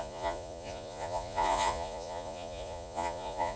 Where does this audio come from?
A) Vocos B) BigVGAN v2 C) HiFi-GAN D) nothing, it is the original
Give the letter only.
A